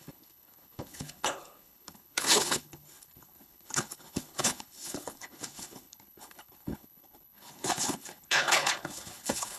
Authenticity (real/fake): fake